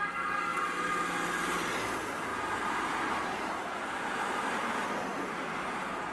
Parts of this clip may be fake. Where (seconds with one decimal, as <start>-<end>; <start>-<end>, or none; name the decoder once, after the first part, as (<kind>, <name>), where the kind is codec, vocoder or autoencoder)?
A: none

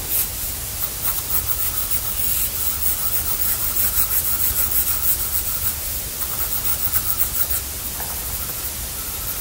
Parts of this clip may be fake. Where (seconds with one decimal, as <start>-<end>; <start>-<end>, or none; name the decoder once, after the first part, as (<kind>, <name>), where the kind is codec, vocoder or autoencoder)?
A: 0.0-6.7 (vocoder, BigVGAN v2)

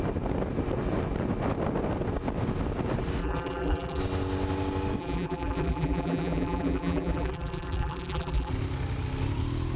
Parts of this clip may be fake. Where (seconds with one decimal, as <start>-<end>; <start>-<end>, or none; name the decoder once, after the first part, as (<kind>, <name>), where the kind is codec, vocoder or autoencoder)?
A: 3.2-4.0 (vocoder, BigVGAN v2); 5.0-8.5

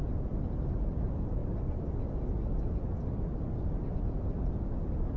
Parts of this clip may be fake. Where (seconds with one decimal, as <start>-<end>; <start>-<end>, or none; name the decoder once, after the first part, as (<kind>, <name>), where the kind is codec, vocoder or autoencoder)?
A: none

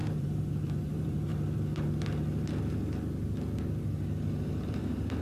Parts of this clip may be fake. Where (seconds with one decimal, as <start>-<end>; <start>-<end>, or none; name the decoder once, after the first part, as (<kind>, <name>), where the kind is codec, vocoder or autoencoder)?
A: 0.0-1.3 (vocoder, BigVGAN v2); 4.4-5.2